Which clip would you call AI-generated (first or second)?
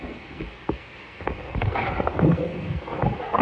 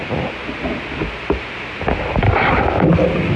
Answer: first